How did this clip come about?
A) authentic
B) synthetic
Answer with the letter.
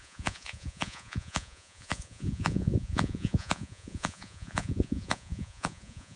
B